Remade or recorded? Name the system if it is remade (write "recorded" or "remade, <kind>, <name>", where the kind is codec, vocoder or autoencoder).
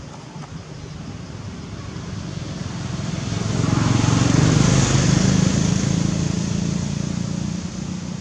recorded